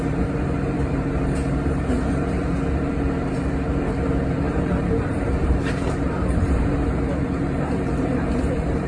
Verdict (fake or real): fake